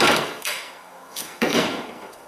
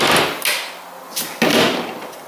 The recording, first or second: second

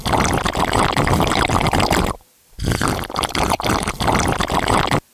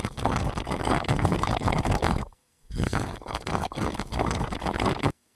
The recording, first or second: first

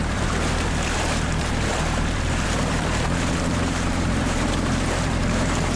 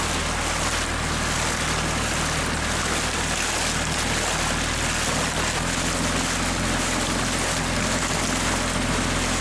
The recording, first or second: second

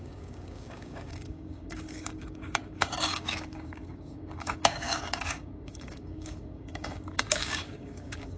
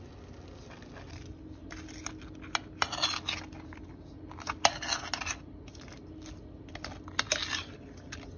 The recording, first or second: second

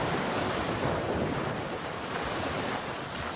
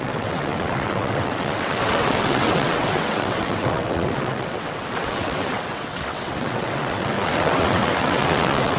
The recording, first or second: first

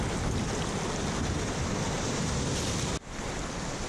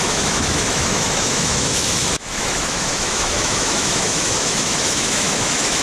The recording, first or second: first